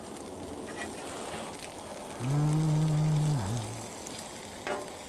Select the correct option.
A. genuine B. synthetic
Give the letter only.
A